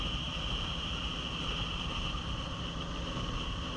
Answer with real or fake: real